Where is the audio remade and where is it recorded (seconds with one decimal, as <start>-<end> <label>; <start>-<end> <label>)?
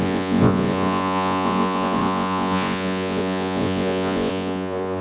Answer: 0.0-5.0 remade